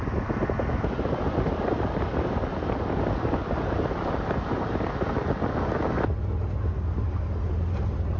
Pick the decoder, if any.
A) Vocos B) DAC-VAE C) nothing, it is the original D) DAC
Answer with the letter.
C